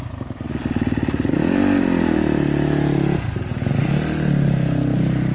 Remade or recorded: recorded